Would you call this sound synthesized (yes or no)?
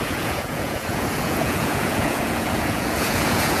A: yes